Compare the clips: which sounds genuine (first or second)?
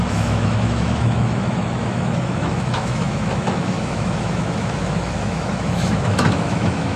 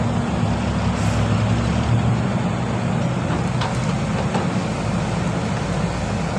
second